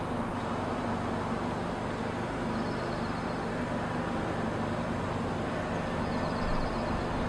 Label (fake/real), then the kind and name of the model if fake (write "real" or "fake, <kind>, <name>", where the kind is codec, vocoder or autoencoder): real